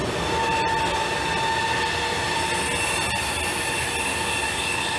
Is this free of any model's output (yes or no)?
yes